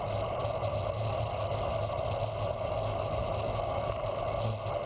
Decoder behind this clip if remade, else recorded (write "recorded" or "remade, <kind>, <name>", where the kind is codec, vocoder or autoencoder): recorded